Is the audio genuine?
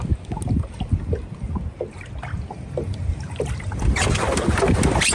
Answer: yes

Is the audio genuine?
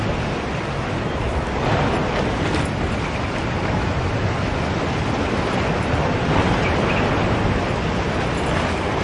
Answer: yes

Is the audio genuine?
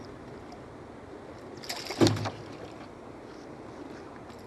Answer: yes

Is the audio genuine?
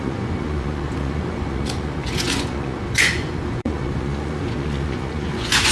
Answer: no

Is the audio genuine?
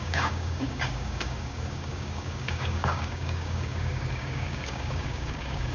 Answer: no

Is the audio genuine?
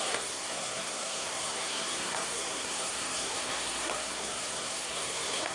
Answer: no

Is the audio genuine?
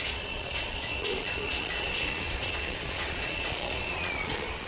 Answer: no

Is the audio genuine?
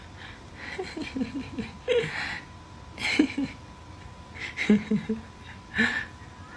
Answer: yes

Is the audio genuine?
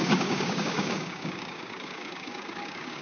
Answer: no